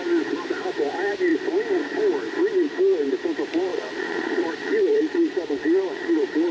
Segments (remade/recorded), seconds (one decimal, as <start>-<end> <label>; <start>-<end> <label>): 0.0-3.7 recorded; 3.7-6.5 remade